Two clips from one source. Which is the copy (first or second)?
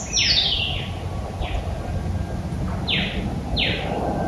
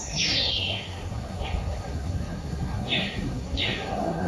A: second